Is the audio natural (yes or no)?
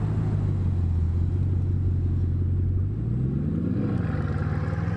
yes